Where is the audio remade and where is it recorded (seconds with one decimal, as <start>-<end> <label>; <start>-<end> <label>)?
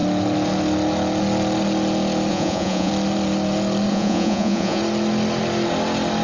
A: 0.0-2.3 recorded; 2.3-2.9 remade; 2.9-3.9 recorded; 3.9-4.8 remade; 4.8-6.2 recorded